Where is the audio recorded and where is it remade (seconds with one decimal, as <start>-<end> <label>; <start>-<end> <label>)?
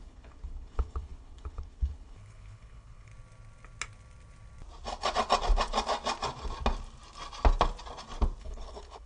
0.0-3.1 remade; 3.1-8.4 recorded; 8.4-9.1 remade